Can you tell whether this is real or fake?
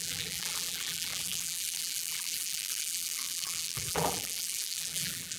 fake